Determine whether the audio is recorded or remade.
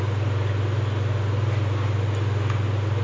recorded